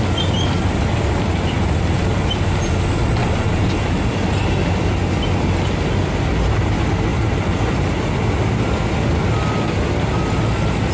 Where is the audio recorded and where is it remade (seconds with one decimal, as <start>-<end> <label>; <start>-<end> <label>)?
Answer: 0.0-3.2 recorded; 3.2-4.0 remade; 4.0-7.1 recorded; 7.1-8.1 remade; 8.1-10.9 recorded